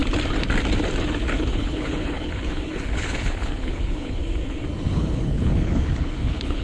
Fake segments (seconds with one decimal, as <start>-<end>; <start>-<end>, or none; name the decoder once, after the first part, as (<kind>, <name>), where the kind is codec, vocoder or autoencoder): 1.3-4.2 (codec, HILCodec); 4.9-6.6